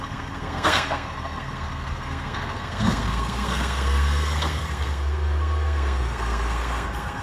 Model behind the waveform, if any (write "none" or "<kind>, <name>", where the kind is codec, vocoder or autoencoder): codec, SNAC